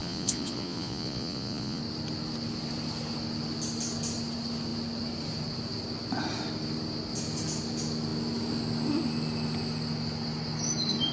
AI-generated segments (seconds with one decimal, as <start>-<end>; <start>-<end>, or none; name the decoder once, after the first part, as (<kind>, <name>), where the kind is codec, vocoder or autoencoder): 0.0-1.8 (vocoder, Vocos)